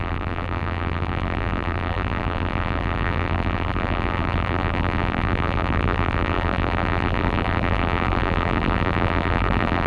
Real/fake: fake